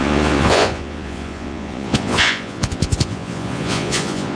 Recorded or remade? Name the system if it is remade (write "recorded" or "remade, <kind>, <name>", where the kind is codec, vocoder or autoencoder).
remade, vocoder, Vocos